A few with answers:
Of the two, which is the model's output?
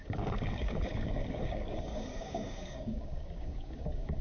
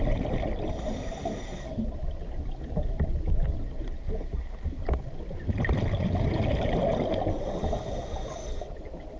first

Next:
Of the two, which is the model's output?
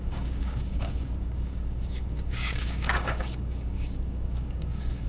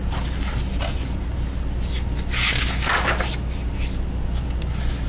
first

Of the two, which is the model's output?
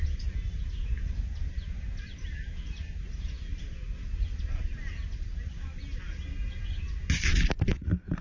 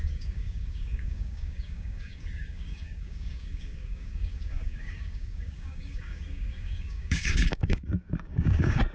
second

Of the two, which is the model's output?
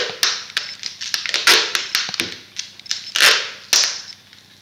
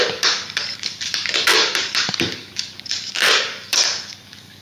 second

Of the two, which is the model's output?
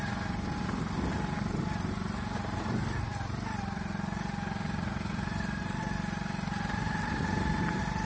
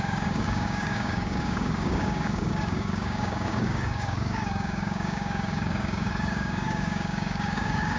second